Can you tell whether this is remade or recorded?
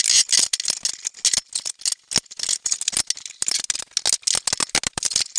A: recorded